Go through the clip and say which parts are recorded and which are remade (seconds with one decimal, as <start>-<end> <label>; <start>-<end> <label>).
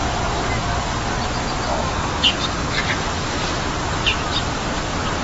0.0-1.7 recorded; 1.7-2.8 remade; 2.8-5.2 recorded